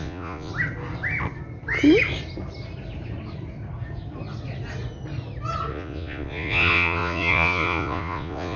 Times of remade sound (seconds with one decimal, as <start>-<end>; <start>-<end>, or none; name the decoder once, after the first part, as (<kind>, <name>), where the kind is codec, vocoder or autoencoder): 0.0-0.5 (vocoder, Vocos); 5.7-8.6